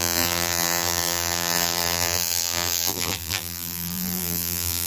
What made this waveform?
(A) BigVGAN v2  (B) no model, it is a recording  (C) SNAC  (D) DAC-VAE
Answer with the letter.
A